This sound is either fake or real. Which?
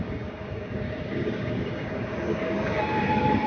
fake